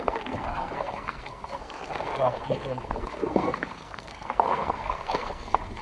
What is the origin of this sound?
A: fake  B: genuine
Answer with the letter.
A